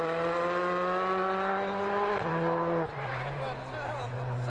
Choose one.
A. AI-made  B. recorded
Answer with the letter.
B